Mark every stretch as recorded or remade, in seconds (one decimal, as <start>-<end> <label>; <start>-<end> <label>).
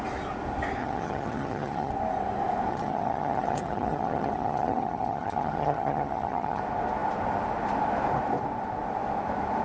0.0-0.8 recorded; 0.8-1.9 remade; 1.9-2.7 recorded; 2.7-6.6 remade; 6.6-9.6 recorded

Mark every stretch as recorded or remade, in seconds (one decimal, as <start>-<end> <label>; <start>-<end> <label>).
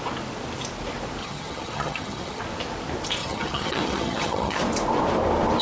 0.0-1.2 recorded; 1.2-2.4 remade; 2.4-3.2 recorded; 3.2-4.6 remade; 4.6-5.6 recorded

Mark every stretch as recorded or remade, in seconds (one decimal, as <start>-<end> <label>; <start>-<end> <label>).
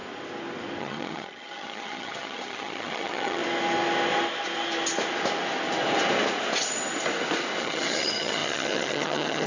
0.0-0.8 recorded; 0.8-3.4 remade; 3.4-7.6 recorded; 7.6-9.5 remade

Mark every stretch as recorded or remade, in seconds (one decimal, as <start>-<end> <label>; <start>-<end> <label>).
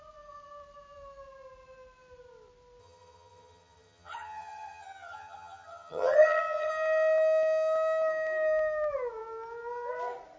0.0-2.8 recorded; 2.8-6.7 remade; 6.7-10.4 recorded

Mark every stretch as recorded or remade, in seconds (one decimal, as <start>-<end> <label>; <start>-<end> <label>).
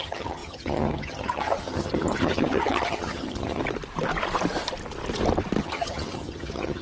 0.0-3.6 remade; 3.6-5.6 recorded; 5.6-6.8 remade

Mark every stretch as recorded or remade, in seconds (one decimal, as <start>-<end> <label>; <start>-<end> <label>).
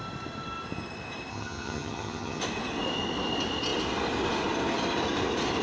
0.0-1.3 recorded; 1.3-2.4 remade; 2.4-5.6 recorded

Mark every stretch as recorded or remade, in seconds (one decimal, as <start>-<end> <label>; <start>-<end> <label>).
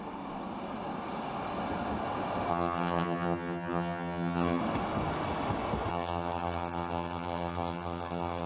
0.0-2.5 recorded; 2.5-4.6 remade; 4.6-5.9 recorded; 5.9-8.5 remade